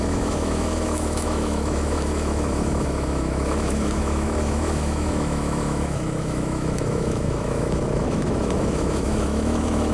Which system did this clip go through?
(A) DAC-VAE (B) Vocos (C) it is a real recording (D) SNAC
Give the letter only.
A